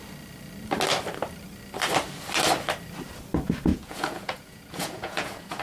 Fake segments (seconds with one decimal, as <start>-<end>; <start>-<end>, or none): 3.7-5.6